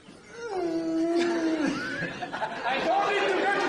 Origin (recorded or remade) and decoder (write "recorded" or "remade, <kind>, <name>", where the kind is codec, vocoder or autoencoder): recorded